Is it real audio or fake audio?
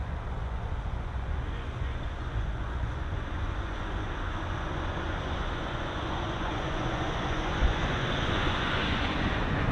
fake